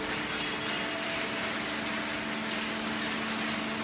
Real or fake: real